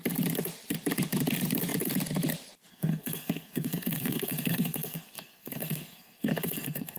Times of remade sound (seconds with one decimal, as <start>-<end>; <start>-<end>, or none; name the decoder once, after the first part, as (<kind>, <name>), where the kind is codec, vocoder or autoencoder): 2.7-7.0 (codec, SNAC)